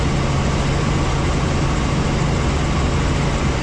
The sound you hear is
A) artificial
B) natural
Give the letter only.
B